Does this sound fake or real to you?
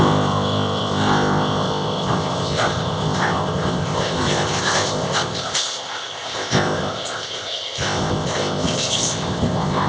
fake